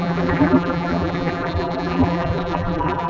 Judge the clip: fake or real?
fake